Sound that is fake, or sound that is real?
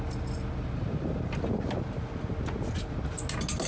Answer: real